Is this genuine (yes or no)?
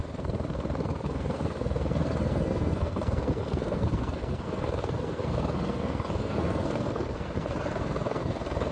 no